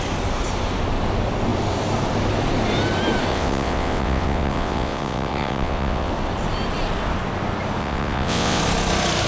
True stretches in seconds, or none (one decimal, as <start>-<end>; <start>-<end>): 0.0-3.3; 6.1-7.8; 8.6-9.3